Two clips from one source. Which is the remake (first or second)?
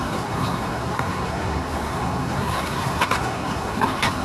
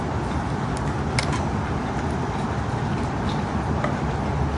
first